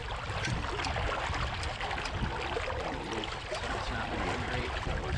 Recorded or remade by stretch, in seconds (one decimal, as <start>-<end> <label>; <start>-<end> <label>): 0.0-3.1 recorded; 3.1-5.2 remade